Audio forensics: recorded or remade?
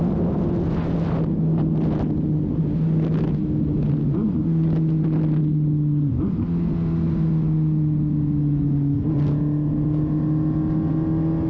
recorded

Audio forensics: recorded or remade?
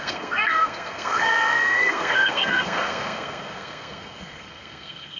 remade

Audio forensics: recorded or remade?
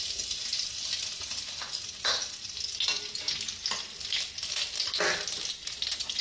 recorded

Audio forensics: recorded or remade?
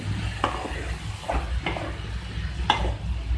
recorded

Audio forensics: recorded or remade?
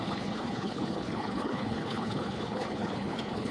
remade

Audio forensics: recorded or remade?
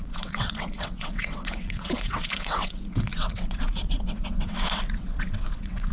remade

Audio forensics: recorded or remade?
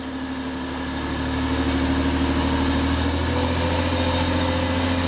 recorded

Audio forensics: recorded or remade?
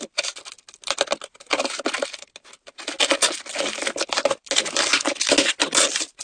recorded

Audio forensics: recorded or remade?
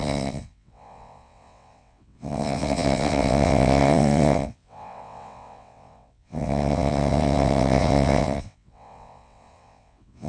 remade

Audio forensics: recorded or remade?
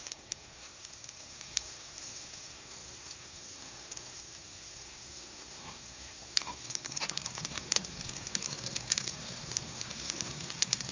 remade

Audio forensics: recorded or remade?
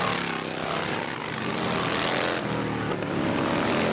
recorded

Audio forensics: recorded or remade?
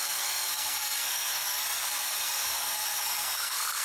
remade